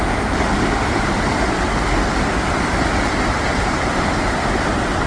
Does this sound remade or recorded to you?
recorded